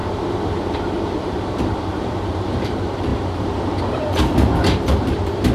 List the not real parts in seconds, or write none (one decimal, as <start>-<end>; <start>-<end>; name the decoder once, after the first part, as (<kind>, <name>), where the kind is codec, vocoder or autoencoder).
0.0-5.5 (vocoder, BigVGAN v2)